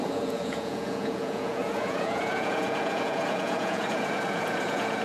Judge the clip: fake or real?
fake